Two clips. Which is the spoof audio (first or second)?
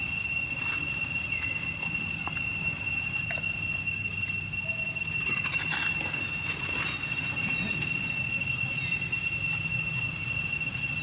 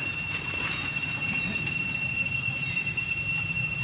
second